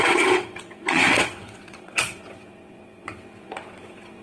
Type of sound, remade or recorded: remade